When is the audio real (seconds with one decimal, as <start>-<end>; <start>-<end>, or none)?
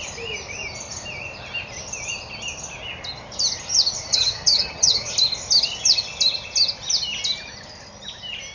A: 0.0-4.1; 5.1-8.5